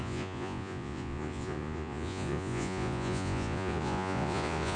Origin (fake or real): fake